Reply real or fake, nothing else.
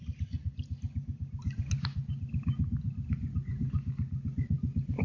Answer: real